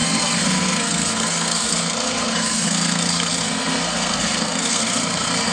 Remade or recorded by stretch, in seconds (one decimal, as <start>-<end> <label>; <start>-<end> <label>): 0.0-5.5 remade